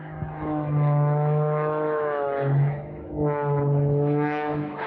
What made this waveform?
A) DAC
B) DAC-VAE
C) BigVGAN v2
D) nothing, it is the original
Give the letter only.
B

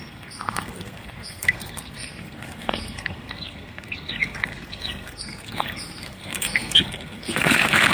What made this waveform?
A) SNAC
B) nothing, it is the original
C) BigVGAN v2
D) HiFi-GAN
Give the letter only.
A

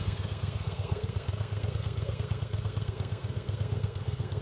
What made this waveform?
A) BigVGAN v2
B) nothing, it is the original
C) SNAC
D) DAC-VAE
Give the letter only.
C